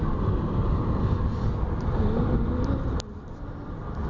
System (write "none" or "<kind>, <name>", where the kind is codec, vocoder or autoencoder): none